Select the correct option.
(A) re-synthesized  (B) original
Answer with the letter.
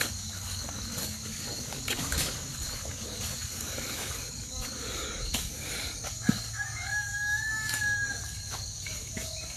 A